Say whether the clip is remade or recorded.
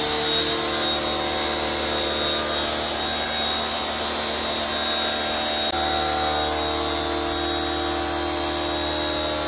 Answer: recorded